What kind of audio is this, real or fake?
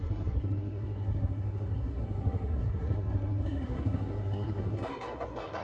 fake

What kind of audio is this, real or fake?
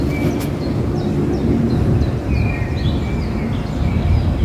real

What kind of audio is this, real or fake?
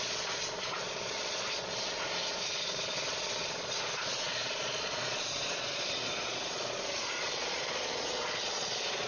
fake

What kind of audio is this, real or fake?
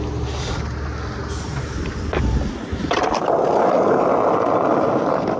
real